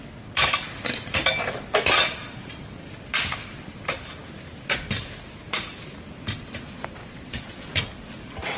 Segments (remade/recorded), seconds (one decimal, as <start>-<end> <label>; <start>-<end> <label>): 0.0-7.0 recorded; 7.0-7.7 remade; 7.7-8.6 recorded